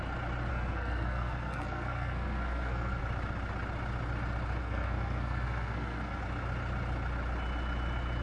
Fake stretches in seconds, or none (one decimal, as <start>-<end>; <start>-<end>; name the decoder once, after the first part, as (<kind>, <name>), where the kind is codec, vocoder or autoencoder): 0.5-3.0 (codec, SNAC); 4.6-6.2